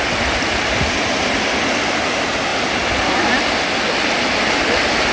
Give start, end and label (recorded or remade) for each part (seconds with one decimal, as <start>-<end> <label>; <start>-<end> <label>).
0.0-2.5 recorded; 2.5-3.3 remade; 3.3-5.1 recorded